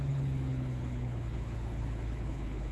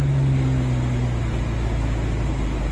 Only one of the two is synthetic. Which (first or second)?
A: first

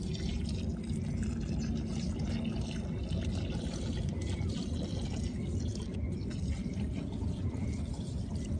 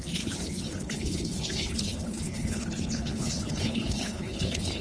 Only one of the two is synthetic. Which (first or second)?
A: second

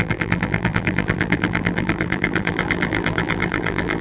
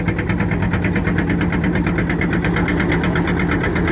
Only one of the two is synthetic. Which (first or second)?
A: first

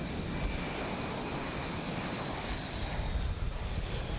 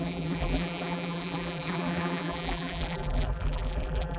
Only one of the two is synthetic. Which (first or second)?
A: second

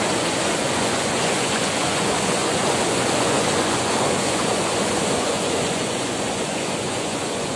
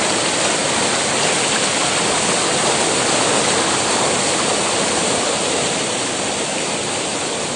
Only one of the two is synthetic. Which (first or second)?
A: first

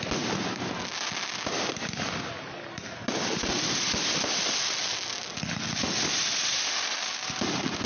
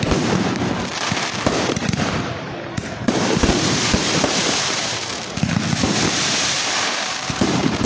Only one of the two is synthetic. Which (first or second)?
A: second